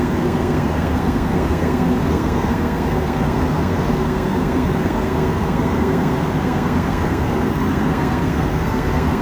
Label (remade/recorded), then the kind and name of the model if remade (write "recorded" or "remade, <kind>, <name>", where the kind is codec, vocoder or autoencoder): remade, codec, SNAC